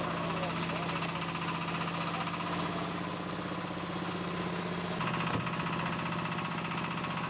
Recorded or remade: recorded